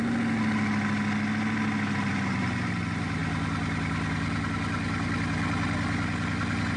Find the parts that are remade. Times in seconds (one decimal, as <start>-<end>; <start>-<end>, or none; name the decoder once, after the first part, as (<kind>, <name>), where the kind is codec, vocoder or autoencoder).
none